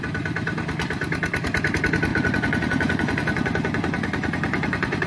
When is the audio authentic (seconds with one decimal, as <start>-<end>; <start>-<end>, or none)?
0.0-2.1